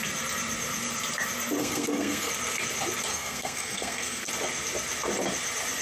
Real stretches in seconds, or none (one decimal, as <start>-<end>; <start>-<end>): 0.0-1.6; 2.3-3.1; 4.3-5.8